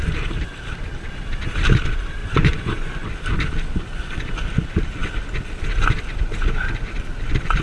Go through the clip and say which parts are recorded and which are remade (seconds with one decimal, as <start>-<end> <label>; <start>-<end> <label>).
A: 0.0-2.2 recorded; 2.2-3.1 remade; 3.1-7.6 recorded